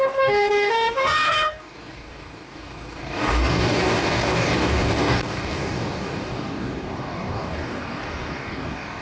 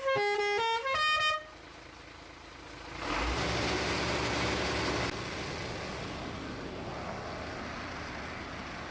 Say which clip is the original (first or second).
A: second